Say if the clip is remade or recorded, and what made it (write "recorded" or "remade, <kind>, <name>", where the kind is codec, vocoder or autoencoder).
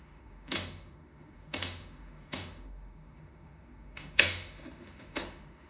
remade, autoencoder, DAC-VAE